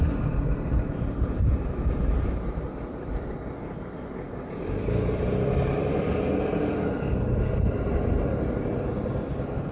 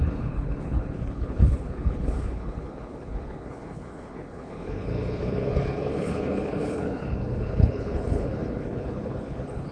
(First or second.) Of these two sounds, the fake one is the second